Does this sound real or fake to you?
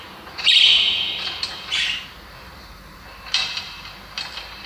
fake